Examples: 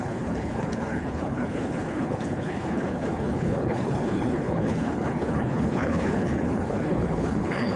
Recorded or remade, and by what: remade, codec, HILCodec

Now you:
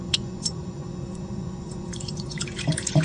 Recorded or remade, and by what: remade, vocoder, Vocos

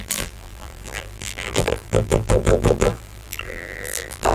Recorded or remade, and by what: remade, vocoder, BigVGAN v2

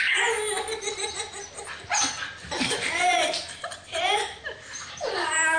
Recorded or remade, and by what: remade, vocoder, BigVGAN v2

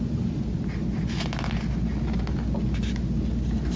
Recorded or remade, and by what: recorded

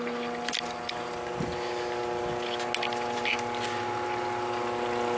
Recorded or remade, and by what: recorded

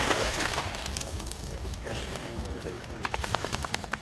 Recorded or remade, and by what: remade, codec, DAC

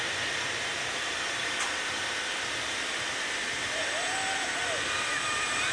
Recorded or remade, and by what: remade, vocoder, BigVGAN v2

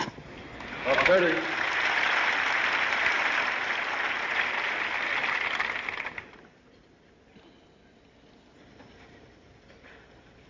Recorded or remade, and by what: recorded